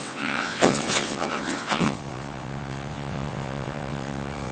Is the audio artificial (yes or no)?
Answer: yes